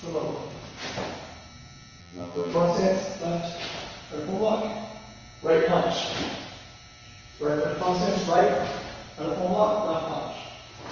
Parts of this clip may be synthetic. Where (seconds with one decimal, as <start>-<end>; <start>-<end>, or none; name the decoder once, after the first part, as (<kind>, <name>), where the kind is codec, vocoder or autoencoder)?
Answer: 2.0-2.5 (vocoder, BigVGAN v2)